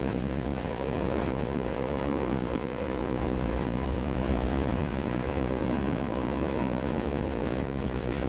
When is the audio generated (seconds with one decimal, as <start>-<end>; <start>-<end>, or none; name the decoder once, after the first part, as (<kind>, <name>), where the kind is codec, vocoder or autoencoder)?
0.0-8.3 (vocoder, Vocos)